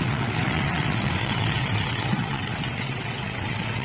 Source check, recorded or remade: remade